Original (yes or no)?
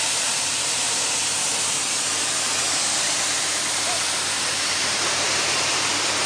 no